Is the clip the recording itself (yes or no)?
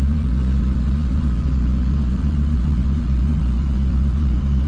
no